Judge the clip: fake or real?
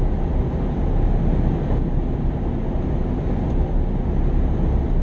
real